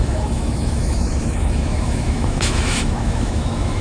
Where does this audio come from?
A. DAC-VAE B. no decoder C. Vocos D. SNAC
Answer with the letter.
A